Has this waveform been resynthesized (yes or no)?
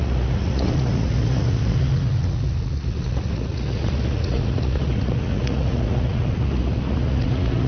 yes